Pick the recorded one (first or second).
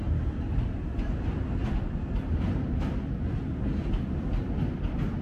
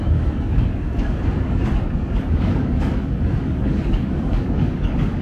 first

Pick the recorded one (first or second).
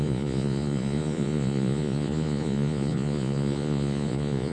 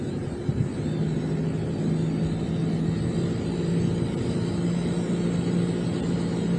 second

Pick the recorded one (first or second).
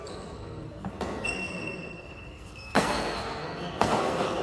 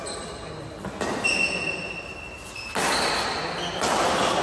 second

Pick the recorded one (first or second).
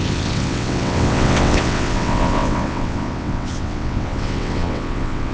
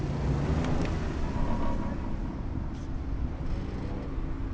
second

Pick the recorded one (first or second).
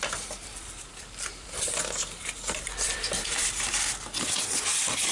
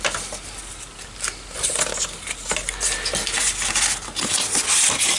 second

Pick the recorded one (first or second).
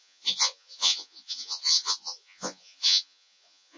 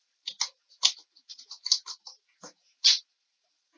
second